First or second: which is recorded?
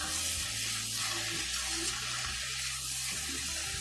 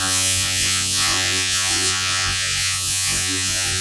first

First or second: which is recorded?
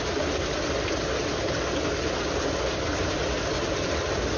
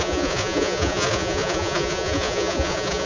first